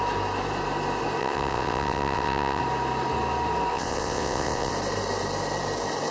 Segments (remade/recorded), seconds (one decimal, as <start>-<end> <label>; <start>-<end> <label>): 0.0-1.2 recorded; 1.2-2.6 remade; 2.6-3.7 recorded; 3.7-4.7 remade; 4.7-6.1 recorded